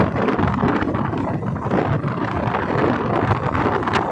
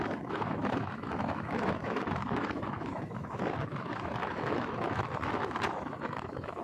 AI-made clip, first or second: second